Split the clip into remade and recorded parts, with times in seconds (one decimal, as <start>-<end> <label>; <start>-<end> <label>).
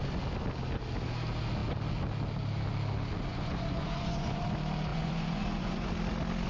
0.0-3.3 recorded; 3.3-4.4 remade; 4.4-4.9 recorded; 4.9-5.9 remade; 5.9-6.5 recorded